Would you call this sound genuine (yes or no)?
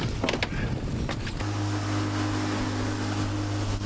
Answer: yes